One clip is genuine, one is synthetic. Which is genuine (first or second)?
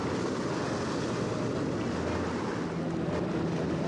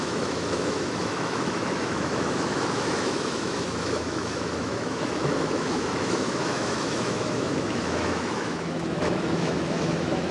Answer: first